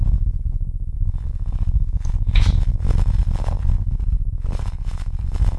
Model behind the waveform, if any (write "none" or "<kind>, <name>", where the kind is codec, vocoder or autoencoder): none